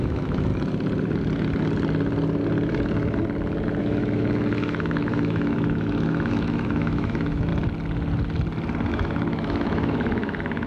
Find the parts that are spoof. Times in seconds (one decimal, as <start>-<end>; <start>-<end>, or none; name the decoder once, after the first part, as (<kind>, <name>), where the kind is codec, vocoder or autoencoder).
0.0-0.5 (autoencoder, DAC-VAE); 3.8-7.5; 8.9-10.7